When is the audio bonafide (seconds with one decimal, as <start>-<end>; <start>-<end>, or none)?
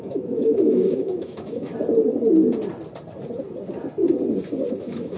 1.7-4.8